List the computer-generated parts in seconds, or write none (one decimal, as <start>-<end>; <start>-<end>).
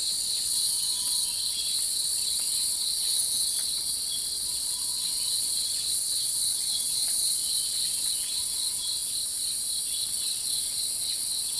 0.0-9.0; 10.0-11.6